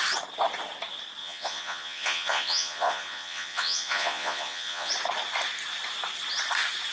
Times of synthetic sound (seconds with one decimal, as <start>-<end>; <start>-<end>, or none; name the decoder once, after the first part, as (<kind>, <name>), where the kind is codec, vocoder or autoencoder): 1.2-4.9 (vocoder, Vocos)

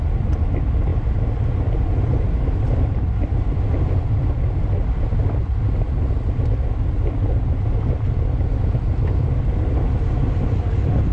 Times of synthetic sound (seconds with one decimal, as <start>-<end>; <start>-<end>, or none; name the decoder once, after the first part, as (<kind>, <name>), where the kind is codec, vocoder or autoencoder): none

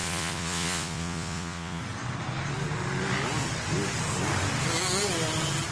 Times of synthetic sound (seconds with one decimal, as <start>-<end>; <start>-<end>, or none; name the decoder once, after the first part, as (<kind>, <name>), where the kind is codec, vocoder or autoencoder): 0.0-1.8 (vocoder, Vocos)

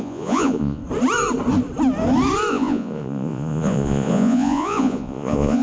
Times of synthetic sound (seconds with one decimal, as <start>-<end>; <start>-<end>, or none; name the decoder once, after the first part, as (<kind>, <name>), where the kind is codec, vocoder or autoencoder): 0.0-0.8 (vocoder, Vocos); 2.5-5.6

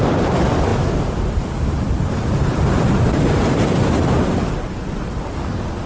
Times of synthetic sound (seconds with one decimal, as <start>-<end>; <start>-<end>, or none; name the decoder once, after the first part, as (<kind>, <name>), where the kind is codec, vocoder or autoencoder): none